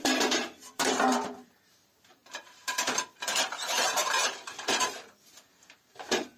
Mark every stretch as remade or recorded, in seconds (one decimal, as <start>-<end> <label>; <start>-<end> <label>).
0.0-6.4 remade